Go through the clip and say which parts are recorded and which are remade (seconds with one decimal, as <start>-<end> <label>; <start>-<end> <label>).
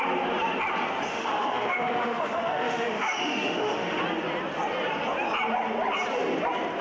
0.0-1.1 recorded; 1.1-4.0 remade; 4.0-6.8 recorded